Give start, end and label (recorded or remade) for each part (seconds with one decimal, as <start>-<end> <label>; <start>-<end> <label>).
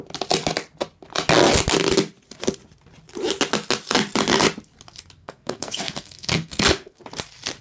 0.0-5.2 recorded; 5.2-7.0 remade; 7.0-7.6 recorded